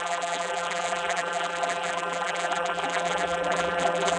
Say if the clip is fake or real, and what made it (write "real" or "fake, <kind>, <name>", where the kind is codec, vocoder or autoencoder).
fake, vocoder, BigVGAN v2